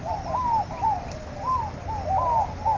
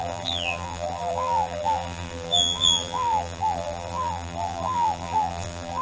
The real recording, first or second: first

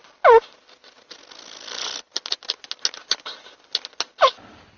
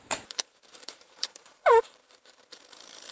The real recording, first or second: first